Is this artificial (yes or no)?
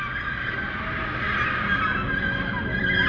no